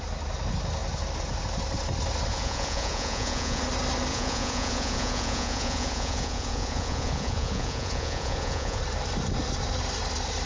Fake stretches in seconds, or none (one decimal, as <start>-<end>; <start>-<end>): 2.3-3.6; 4.1-8.8